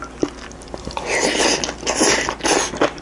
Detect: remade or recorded recorded